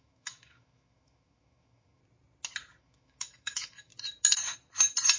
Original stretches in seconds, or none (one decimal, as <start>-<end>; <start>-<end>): 2.0-2.8; 3.9-5.2